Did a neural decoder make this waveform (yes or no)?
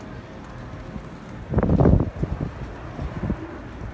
no